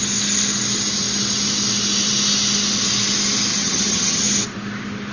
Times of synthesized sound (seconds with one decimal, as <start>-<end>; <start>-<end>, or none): 3.5-4.2